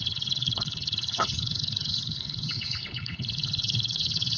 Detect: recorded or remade remade